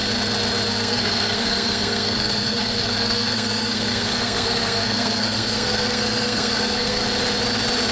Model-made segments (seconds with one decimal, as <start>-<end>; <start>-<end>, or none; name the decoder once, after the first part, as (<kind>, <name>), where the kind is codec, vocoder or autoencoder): 0.7-7.0 (codec, SNAC)